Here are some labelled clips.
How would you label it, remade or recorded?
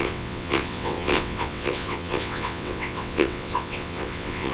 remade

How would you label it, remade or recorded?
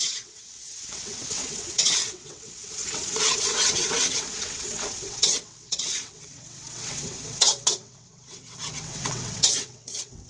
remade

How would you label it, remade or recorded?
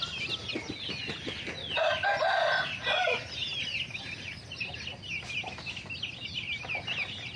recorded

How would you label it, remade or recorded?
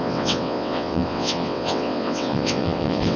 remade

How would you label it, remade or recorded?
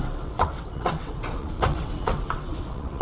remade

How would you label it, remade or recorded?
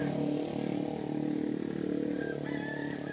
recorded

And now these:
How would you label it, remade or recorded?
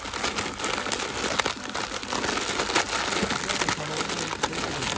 recorded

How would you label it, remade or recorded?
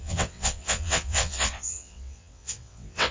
remade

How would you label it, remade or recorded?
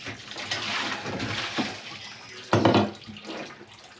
recorded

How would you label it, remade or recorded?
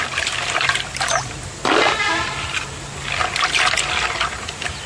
recorded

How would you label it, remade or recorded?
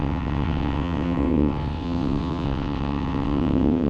remade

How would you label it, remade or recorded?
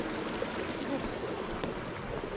recorded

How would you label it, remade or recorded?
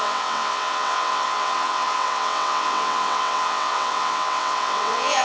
remade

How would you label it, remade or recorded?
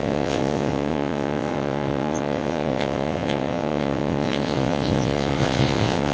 remade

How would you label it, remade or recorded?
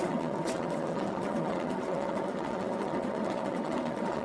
remade